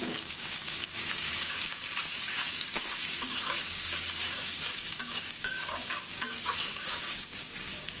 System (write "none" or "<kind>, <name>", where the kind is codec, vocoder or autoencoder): codec, DAC